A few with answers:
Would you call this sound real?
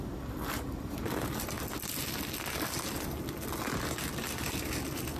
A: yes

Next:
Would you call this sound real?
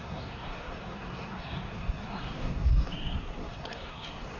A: no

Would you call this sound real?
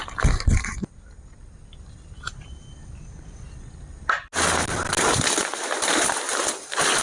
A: yes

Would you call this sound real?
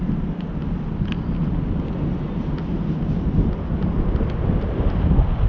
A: yes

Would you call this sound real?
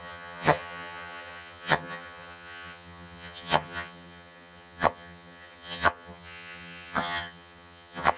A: no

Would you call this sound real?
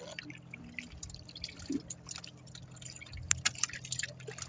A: yes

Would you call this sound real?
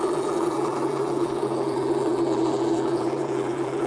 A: no